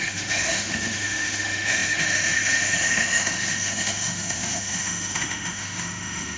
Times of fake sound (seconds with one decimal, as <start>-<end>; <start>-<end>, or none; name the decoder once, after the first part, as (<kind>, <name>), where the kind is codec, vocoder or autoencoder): 0.0-6.4 (autoencoder, DAC-VAE)